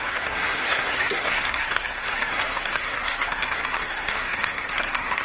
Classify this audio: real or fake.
fake